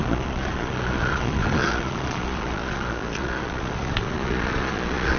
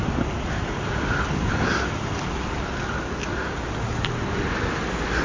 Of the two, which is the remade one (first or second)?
first